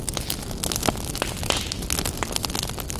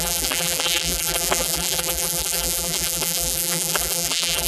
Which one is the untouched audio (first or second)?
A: first